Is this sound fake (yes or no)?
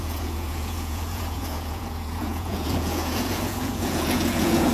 yes